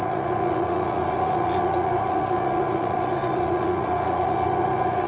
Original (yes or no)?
no